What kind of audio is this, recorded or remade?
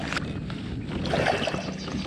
recorded